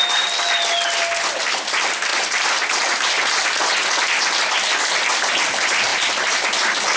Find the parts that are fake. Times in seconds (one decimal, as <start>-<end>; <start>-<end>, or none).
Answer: 5.9-6.5